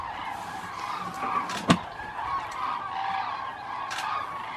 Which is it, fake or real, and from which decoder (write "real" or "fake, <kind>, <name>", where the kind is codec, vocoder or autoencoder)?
real